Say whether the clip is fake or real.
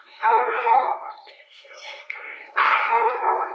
fake